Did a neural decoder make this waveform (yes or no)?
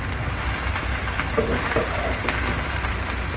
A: no